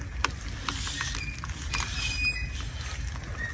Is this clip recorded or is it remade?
recorded